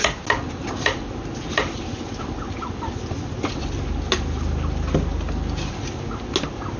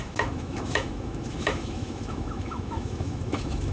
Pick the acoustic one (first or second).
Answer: first